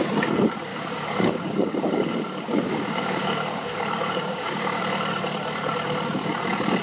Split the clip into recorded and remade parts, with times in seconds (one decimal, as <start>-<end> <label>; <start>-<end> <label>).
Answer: 0.0-0.7 recorded; 0.7-4.8 remade; 4.8-6.8 recorded